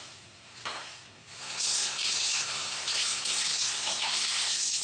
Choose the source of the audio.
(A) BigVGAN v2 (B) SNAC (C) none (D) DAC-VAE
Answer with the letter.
B